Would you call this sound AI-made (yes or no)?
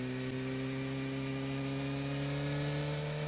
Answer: no